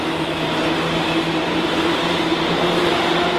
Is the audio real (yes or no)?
yes